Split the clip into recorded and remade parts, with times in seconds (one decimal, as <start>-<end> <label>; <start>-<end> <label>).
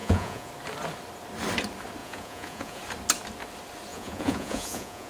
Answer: 0.0-0.5 remade; 0.5-2.0 recorded; 2.0-2.8 remade; 2.8-3.9 recorded; 3.9-5.1 remade